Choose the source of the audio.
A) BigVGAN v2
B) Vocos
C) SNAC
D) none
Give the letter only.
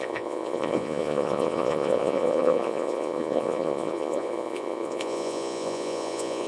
B